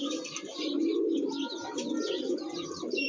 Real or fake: real